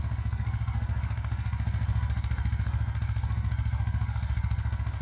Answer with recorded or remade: remade